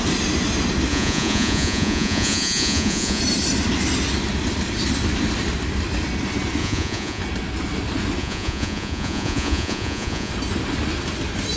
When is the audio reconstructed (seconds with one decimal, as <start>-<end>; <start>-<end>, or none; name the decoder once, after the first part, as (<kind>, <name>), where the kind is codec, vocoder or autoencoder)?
0.9-3.2 (vocoder, Vocos); 6.6-7.2; 8.2-10.3